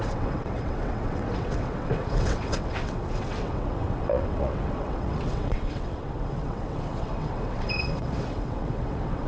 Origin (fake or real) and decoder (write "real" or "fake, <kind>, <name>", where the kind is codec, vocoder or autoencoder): fake, vocoder, WaveNeXt